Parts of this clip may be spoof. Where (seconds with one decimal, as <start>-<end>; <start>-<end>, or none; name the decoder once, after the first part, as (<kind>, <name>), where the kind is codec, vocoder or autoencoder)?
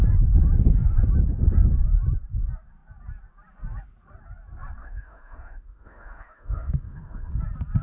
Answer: 4.8-7.3 (autoencoder, DAC-VAE)